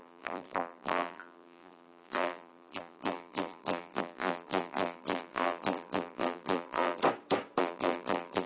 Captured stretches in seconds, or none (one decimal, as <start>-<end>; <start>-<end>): 7.0-7.6